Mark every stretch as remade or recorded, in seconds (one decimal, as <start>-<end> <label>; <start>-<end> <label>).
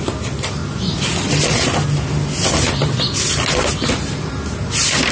0.0-5.1 recorded